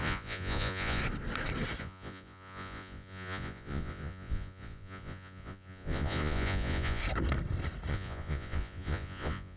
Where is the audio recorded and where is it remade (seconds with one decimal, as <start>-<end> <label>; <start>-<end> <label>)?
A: 0.0-1.0 remade; 1.0-1.8 recorded; 1.8-7.0 remade; 7.0-7.9 recorded; 7.9-9.6 remade